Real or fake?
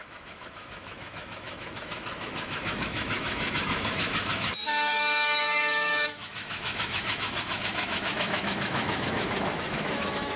fake